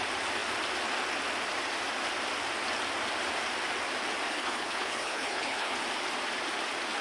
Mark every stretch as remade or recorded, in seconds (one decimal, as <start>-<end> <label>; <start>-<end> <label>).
0.0-4.3 recorded; 4.3-5.7 remade; 5.7-7.0 recorded